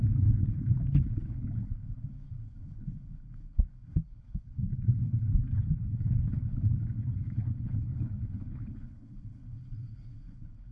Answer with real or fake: fake